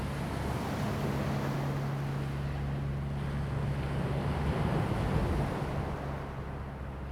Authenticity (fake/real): real